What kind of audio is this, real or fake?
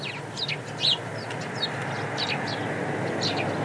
real